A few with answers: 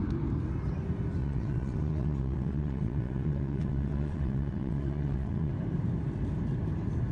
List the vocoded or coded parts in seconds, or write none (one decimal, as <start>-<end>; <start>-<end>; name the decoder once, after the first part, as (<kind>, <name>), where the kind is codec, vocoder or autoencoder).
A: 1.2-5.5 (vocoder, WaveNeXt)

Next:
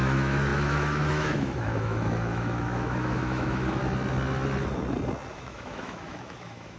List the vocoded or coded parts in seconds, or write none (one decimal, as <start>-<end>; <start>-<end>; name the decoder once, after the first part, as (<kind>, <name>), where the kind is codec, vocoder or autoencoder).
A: 0.0-3.8 (autoencoder, DAC-VAE); 5.3-6.8

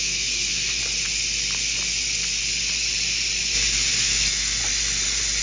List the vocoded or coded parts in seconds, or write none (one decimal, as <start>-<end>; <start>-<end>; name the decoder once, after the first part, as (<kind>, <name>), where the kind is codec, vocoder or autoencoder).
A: 0.0-0.8 (autoencoder, DAC-VAE); 4.0-4.6

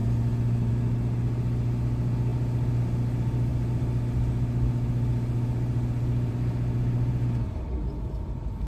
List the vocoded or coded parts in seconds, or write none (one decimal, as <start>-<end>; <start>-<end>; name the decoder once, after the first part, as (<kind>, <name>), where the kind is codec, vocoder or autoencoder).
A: none

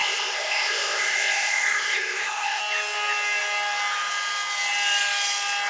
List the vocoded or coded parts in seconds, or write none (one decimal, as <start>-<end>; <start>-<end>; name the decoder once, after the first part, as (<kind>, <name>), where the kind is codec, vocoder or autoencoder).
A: 0.0-2.6 (codec, ZipCodec)